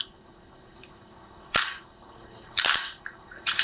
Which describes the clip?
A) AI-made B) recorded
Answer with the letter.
A